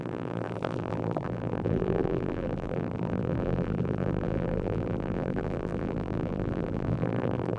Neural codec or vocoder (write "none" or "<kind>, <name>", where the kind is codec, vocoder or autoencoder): vocoder, BigVGAN v2